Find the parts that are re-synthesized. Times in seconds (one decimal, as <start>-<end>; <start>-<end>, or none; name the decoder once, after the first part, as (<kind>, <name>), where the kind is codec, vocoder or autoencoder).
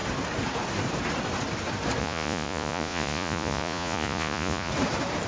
2.0-4.7 (vocoder, Vocos)